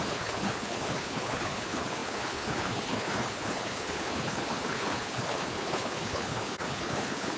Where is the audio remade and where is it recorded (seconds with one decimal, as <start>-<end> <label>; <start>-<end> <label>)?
0.0-7.4 remade